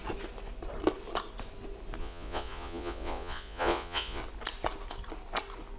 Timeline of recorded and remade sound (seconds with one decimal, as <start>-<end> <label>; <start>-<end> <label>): 0.0-2.0 recorded; 2.0-4.2 remade; 4.2-5.8 recorded